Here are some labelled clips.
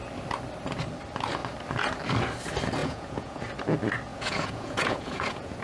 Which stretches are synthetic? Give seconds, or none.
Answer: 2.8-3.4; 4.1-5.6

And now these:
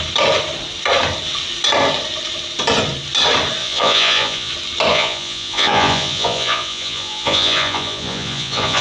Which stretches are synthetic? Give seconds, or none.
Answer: 3.6-4.5; 4.9-8.8

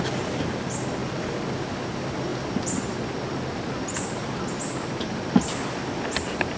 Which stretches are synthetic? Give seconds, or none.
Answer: none

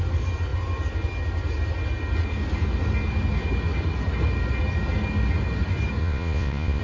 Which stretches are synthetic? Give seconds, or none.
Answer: 6.0-6.8

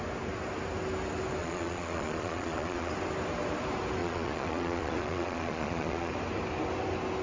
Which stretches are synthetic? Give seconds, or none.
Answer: 1.4-2.9; 4.0-6.1

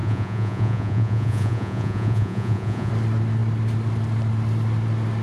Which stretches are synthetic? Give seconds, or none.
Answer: 0.0-2.9